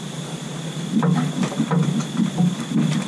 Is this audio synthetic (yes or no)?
no